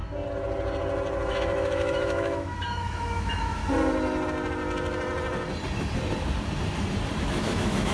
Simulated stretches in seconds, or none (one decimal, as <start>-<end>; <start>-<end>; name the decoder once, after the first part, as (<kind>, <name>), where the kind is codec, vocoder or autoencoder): 1.3-3.6 (autoencoder, DAC-VAE); 7.2-7.9